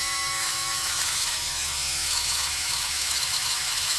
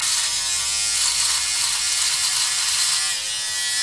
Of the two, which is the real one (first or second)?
second